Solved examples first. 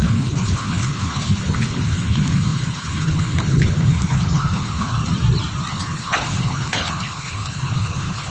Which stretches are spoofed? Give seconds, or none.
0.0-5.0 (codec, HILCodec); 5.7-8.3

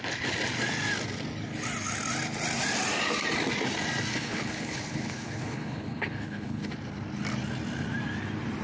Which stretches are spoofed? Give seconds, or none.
4.1-6.7 (codec, HILCodec)

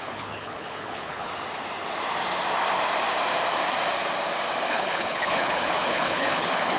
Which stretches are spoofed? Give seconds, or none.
0.0-1.3 (codec, HILCodec); 4.7-6.8

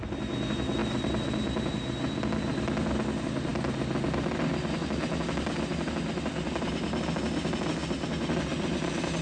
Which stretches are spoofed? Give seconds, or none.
none